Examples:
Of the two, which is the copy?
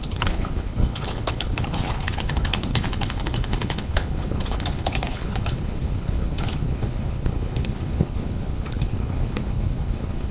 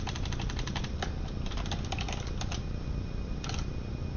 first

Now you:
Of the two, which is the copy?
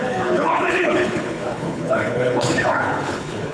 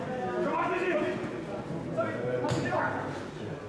first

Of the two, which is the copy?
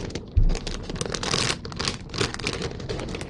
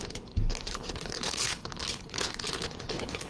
second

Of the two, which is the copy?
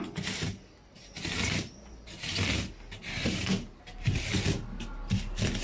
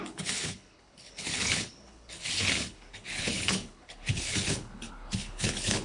second